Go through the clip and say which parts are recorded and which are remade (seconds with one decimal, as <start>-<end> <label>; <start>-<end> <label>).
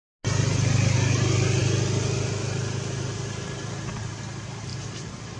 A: 0.0-5.4 recorded